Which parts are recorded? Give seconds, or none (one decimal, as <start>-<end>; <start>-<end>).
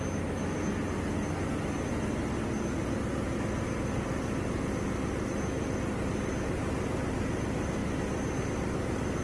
0.0-9.2